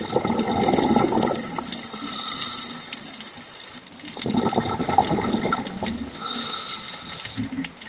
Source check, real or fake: real